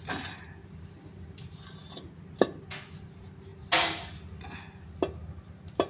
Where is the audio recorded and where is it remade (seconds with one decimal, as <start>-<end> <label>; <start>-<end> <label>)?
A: 0.0-5.9 recorded